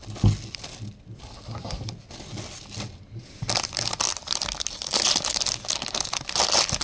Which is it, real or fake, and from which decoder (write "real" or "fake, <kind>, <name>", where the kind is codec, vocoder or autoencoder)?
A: real